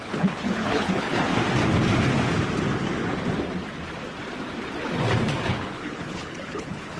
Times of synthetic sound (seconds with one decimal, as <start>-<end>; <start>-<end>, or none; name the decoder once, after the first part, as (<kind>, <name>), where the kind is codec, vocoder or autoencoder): 0.0-1.3 (codec, HILCodec); 5.5-7.0

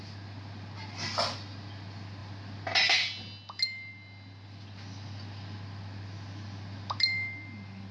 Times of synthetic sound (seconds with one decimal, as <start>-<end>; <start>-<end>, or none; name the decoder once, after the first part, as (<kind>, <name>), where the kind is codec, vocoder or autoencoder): none

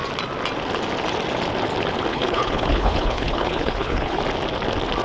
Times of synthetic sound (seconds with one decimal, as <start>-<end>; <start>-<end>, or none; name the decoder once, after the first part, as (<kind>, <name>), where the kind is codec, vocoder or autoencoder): 2.1-4.2 (codec, HILCodec)

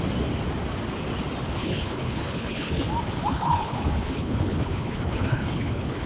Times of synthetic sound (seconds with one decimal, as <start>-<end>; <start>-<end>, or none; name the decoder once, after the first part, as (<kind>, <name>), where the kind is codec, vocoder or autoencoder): 1.6-2.8 (codec, HILCodec); 3.3-6.1

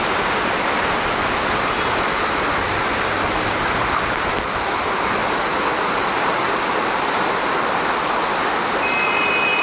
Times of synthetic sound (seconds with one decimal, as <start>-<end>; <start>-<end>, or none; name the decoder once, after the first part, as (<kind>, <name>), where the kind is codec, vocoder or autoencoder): none

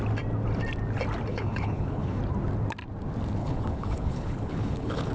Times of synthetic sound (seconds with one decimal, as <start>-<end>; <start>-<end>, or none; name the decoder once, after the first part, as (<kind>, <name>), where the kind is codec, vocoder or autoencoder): 1.3-2.2 (codec, HILCodec); 3.4-5.1